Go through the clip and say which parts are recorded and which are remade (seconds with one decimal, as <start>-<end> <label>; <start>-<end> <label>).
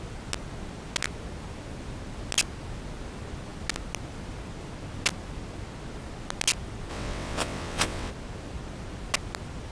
0.0-6.9 recorded; 6.9-8.1 remade; 8.1-9.7 recorded